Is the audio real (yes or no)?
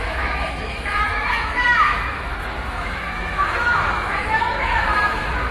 no